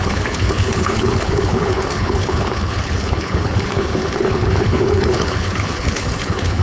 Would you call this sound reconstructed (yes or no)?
yes